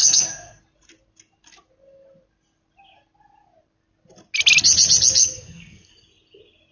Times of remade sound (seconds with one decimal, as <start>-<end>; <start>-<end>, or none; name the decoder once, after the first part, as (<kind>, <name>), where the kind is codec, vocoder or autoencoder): 0.0-0.6 (codec, SNAC); 5.2-5.9